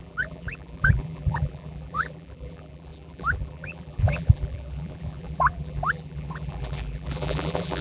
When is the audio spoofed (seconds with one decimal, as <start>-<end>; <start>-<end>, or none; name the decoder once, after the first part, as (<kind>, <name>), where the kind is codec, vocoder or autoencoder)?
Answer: 0.0-7.8 (vocoder, BigVGAN v2)